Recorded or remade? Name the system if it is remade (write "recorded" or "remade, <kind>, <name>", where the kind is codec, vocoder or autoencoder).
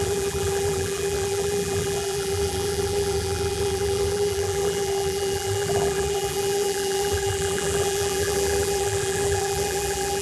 remade, vocoder, BigVGAN v2